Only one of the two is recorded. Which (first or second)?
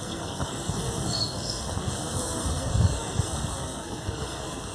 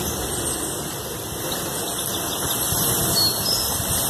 second